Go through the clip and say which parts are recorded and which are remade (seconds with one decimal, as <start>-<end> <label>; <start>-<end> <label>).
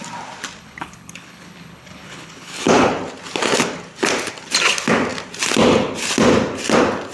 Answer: 0.0-0.6 recorded; 0.6-2.9 remade; 2.9-7.1 recorded